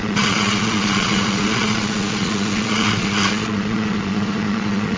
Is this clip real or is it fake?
fake